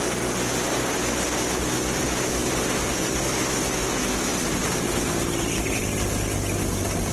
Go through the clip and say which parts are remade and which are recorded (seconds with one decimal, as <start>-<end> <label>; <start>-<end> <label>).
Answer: 0.0-2.4 recorded; 2.4-3.2 remade; 3.2-7.1 recorded